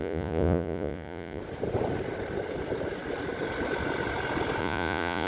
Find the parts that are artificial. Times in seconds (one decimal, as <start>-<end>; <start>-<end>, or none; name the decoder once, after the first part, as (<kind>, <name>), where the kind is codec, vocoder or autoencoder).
0.0-1.4 (vocoder, Vocos); 4.6-5.3

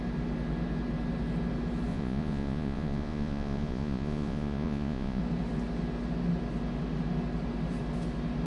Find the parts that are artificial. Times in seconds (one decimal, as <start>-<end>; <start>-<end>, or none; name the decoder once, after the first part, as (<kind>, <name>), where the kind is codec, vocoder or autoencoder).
1.9-5.2 (vocoder, Vocos)

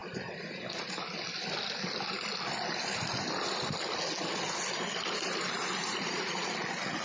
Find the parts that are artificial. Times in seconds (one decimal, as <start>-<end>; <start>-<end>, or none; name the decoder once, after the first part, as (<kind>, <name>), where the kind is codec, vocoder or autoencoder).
5.9-6.5 (vocoder, Vocos)

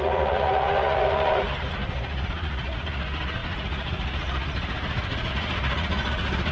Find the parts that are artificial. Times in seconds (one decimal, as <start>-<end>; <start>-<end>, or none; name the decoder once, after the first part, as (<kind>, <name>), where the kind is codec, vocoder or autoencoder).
0.0-6.5 (vocoder, Vocos)

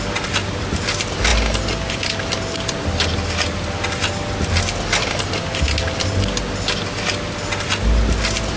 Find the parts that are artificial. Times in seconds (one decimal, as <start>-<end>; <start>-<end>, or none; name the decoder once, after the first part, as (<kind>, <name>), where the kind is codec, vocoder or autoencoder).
none

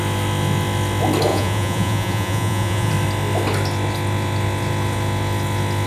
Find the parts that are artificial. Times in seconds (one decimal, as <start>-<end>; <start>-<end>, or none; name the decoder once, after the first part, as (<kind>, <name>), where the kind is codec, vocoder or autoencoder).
1.3-2.9 (vocoder, Vocos)

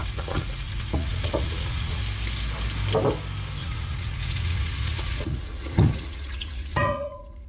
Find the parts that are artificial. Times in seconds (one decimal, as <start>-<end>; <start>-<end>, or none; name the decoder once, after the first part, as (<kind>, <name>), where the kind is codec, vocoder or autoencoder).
0.0-2.0 (vocoder, Vocos); 3.6-7.5

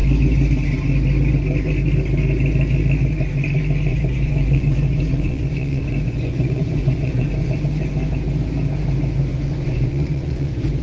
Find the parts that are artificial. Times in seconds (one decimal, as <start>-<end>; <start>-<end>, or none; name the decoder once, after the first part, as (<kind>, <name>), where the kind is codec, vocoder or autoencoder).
3.9-7.6 (vocoder, Vocos); 9.3-10.8